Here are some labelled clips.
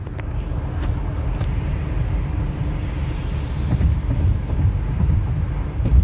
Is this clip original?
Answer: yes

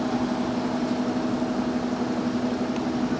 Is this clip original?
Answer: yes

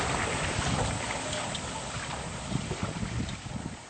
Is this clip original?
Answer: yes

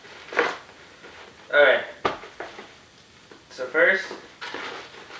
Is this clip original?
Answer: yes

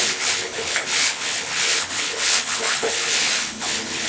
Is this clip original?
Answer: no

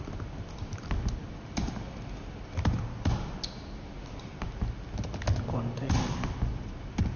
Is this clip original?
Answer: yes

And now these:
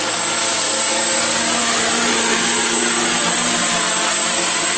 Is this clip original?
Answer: yes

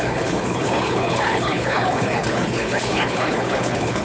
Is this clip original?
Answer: no